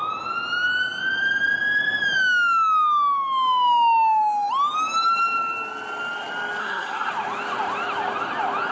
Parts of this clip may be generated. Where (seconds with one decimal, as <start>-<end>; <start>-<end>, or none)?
6.6-7.1